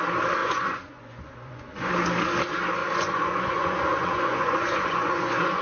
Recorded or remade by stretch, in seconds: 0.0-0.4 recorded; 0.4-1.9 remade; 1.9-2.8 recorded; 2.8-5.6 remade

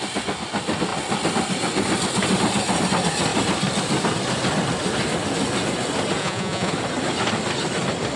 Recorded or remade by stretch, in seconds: 0.0-6.2 recorded; 6.2-6.7 remade; 6.7-8.2 recorded

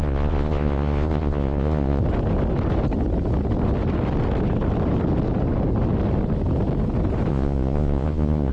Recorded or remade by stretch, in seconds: 0.0-2.0 remade; 2.0-7.3 recorded; 7.3-8.5 remade